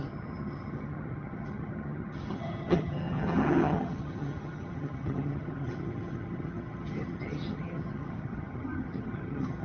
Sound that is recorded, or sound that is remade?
remade